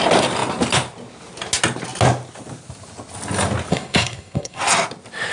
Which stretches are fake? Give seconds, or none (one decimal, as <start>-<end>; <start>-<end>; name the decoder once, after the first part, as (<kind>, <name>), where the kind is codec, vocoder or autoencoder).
3.7-4.6 (codec, SNAC)